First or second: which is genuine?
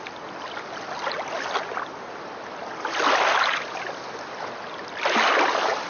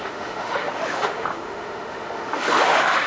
first